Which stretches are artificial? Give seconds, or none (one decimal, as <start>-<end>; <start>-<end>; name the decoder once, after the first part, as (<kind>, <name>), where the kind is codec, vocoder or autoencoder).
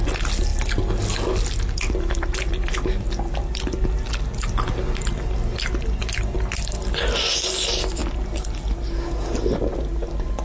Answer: none